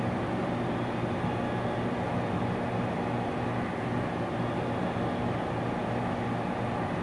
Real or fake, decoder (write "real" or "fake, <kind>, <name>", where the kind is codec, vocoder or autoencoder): real